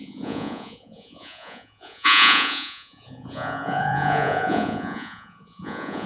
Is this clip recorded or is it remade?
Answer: remade